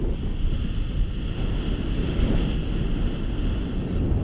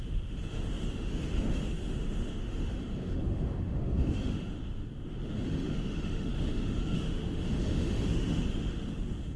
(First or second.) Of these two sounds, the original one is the first